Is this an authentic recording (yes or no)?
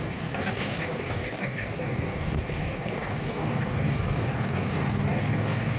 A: no